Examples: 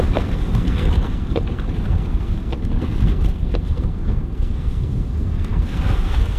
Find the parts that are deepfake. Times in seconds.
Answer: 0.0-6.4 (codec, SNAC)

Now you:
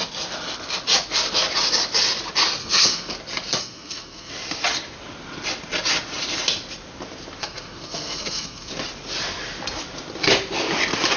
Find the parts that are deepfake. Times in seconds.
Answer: 2.6-3.1 (codec, SNAC); 3.6-4.3; 7.4-8.7

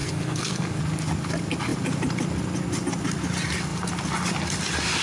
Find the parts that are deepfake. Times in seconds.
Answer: 0.0-0.8 (codec, SNAC)

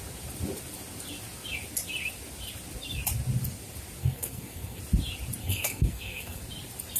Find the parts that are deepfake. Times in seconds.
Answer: 4.0-4.8 (codec, SNAC); 5.4-6.4

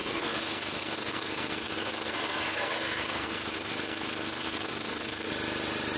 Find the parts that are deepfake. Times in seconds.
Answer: 0.0-5.3 (codec, SNAC)

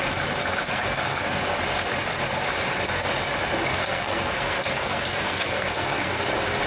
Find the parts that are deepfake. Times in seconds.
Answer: 0.7-1.4 (codec, SNAC); 3.7-6.2

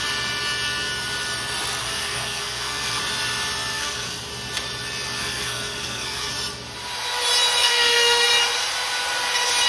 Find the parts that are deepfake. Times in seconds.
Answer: 1.8-3.0 (codec, SNAC); 3.7-4.3; 5.2-6.3; 7.6-8.3

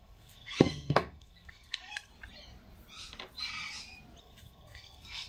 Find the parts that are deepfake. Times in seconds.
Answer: 0.0-2.1 (codec, SNAC); 4.2-5.3